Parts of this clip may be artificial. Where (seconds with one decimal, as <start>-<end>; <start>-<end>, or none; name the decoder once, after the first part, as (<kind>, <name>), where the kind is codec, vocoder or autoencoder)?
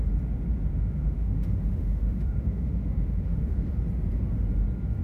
0.7-3.7 (autoencoder, DAC-VAE)